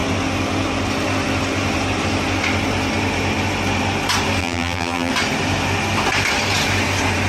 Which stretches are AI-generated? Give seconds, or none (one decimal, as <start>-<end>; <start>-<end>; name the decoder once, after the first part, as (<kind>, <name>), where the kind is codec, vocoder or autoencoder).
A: 4.4-5.1 (vocoder, BigVGAN v2)